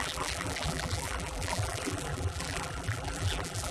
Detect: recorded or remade remade